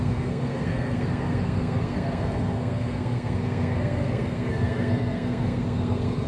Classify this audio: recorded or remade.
remade